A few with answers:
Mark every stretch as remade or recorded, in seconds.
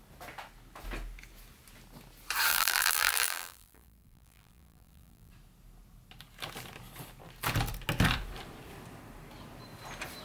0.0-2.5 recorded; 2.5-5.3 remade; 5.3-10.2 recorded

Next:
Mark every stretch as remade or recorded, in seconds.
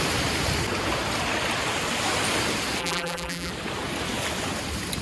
0.0-2.8 recorded; 2.8-3.5 remade; 3.5-5.0 recorded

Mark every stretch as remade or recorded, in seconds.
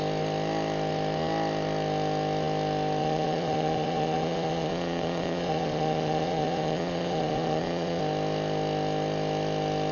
0.0-3.0 recorded; 3.0-8.0 remade; 8.0-9.9 recorded